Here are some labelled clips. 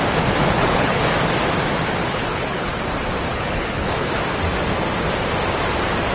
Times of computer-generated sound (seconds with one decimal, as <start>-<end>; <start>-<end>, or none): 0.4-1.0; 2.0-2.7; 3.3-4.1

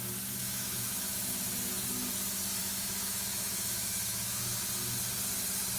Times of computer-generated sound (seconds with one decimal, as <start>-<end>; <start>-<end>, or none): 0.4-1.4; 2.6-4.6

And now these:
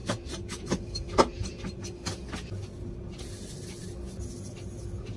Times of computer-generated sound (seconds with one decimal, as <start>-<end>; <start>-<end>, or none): 0.0-1.8

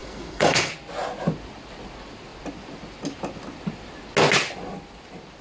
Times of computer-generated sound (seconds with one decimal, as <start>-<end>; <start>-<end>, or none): 0.0-0.7